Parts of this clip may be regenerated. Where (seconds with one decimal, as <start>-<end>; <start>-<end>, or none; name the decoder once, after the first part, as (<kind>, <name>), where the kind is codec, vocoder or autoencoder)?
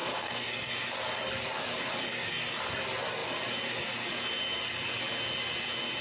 0.0-0.7 (codec, SNAC)